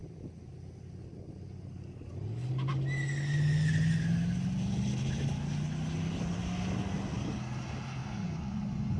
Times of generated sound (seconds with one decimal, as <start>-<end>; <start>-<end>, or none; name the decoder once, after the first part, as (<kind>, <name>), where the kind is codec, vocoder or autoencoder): 8.0-9.0 (vocoder, Vocos)